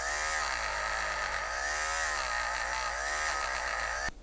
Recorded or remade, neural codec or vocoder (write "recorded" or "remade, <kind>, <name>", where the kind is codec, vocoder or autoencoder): recorded